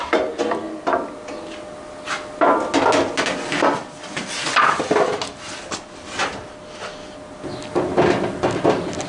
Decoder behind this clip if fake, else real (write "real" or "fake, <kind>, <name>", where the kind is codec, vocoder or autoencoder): real